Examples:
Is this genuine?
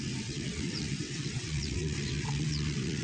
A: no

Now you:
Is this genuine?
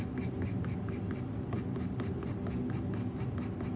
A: yes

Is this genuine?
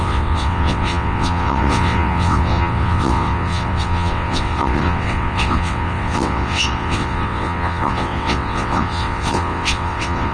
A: no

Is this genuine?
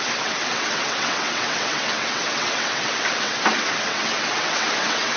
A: no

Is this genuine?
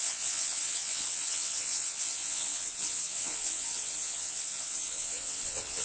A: no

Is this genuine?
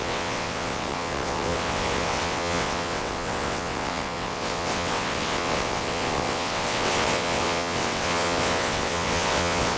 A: no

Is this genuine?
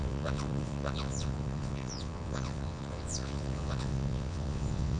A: no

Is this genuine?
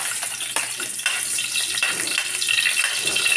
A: yes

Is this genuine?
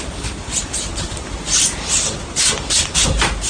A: yes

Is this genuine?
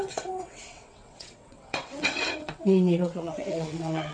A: no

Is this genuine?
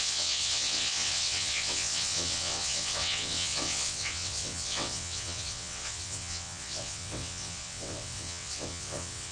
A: no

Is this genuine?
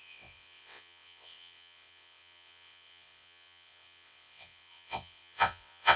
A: no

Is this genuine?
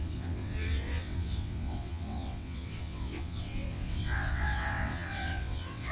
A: no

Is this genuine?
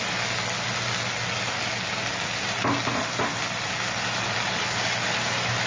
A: yes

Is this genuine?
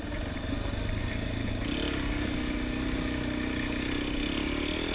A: yes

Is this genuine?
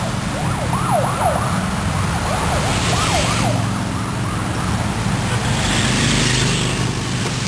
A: yes